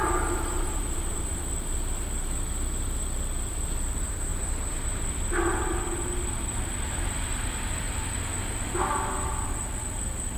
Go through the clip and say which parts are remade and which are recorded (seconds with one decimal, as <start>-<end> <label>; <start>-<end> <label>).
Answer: 0.0-1.4 remade; 1.4-4.3 recorded; 4.3-5.0 remade; 5.0-10.4 recorded